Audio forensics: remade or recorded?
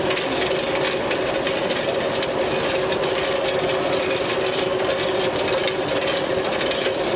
recorded